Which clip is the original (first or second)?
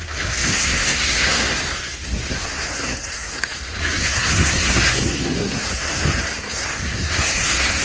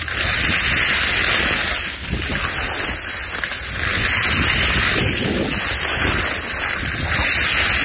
second